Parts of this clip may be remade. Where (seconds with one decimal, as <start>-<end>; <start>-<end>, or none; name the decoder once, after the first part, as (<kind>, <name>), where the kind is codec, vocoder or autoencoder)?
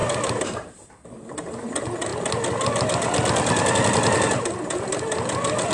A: 0.0-0.9 (vocoder, BigVGAN v2)